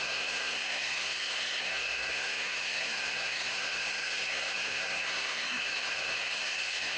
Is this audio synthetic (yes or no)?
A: yes